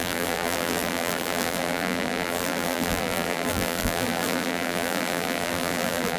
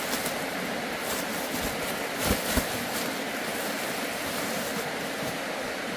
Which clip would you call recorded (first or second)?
second